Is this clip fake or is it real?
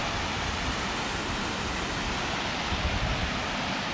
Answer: real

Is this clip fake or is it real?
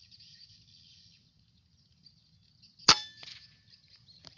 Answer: real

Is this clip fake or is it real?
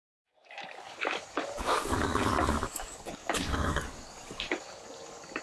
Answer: fake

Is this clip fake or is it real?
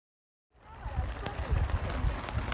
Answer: real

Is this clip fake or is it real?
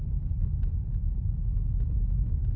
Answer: real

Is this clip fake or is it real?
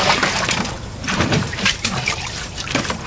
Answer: fake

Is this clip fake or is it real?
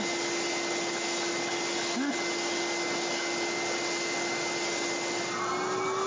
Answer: real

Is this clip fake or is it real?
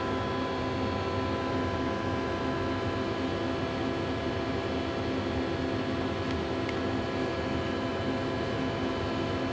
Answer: real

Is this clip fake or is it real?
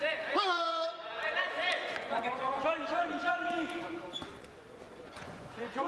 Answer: fake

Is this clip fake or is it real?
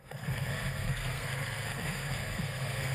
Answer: fake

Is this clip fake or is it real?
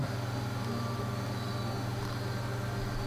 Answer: real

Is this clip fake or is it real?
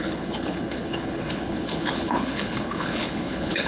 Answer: fake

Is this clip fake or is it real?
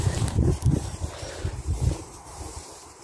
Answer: fake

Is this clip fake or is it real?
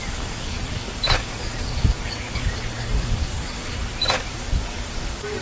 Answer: fake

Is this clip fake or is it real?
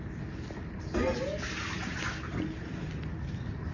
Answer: real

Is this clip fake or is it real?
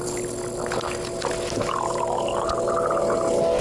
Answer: real